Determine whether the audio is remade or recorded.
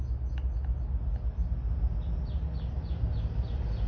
recorded